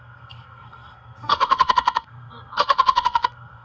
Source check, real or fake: fake